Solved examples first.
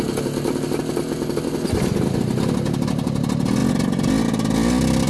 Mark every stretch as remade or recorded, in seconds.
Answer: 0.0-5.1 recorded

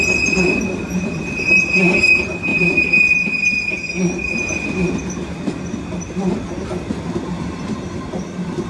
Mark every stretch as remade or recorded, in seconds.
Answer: 0.0-2.5 recorded; 2.5-3.0 remade; 3.0-8.7 recorded

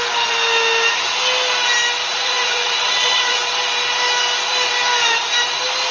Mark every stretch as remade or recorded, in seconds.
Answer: 0.0-2.1 recorded; 2.1-3.5 remade; 3.5-5.9 recorded

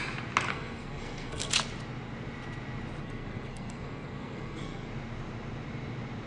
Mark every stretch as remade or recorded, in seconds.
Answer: 0.0-0.5 recorded; 0.5-1.5 remade; 1.5-3.0 recorded; 3.0-4.9 remade; 4.9-6.3 recorded